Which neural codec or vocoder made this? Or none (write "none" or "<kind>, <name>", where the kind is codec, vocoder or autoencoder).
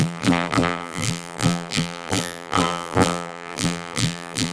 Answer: vocoder, BigVGAN v2